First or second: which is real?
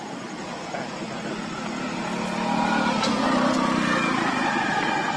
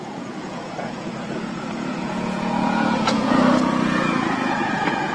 first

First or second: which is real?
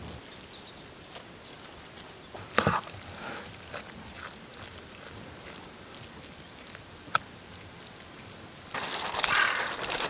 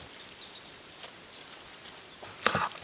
first